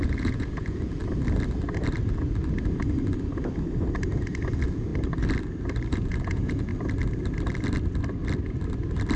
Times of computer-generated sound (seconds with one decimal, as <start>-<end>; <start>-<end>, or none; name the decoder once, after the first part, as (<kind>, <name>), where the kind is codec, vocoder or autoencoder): 0.0-1.0 (vocoder, Vocos); 4.5-4.9; 5.9-6.7